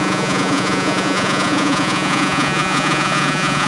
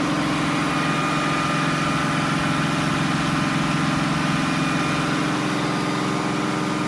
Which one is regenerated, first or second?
first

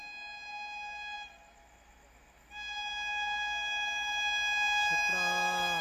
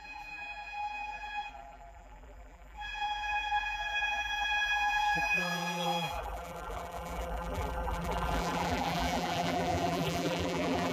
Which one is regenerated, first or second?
second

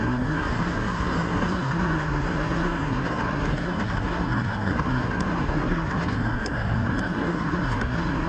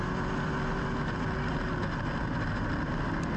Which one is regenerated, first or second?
first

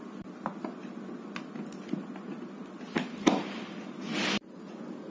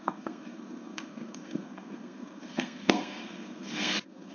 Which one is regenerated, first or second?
second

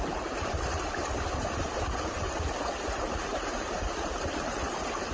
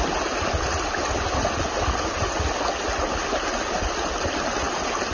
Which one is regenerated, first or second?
first